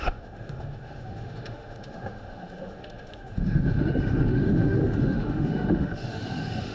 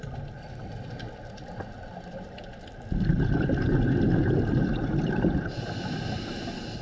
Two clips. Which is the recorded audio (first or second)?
second